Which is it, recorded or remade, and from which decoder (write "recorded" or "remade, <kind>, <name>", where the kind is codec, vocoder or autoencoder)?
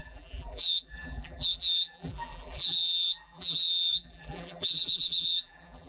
remade, vocoder, BigVGAN v2